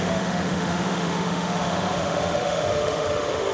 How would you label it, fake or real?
fake